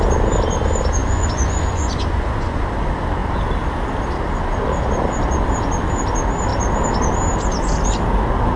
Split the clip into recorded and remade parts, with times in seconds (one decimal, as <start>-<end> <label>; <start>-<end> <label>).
0.0-1.0 recorded; 1.0-2.6 remade; 2.6-8.6 recorded